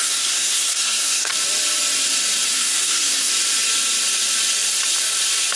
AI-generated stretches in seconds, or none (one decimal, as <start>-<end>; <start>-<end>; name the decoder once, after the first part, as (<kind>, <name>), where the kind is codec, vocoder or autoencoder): 0.0-1.3 (codec, SNAC); 2.5-3.3